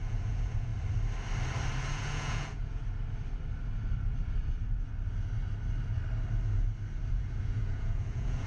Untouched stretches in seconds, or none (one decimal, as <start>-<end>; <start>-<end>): 0.7-1.9; 2.8-7.1